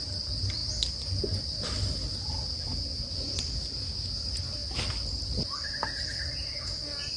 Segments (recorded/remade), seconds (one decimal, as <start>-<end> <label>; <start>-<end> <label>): 0.0-7.2 recorded